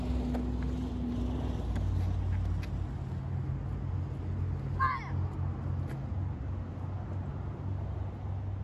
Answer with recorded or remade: recorded